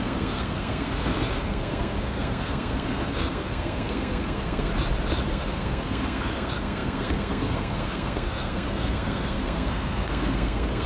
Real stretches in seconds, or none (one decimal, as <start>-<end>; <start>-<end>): 4.7-5.3